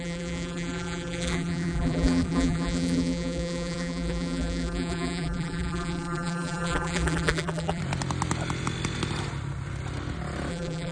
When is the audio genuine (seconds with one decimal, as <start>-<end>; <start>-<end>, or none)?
7.8-10.5